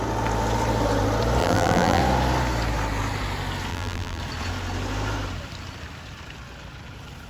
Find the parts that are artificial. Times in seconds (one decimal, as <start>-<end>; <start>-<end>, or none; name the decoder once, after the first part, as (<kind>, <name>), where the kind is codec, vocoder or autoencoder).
1.4-2.0 (vocoder, BigVGAN v2); 3.7-4.2

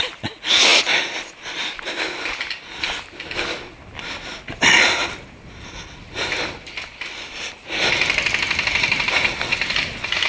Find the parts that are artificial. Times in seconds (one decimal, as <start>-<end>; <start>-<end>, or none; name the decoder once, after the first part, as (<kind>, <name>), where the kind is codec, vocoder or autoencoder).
none